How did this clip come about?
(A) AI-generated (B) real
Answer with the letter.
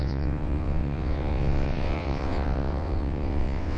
A